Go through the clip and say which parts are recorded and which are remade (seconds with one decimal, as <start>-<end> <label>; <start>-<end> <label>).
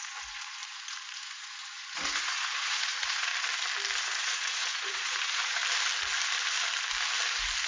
0.0-3.3 remade; 3.3-4.0 recorded; 4.0-5.6 remade; 5.6-7.7 recorded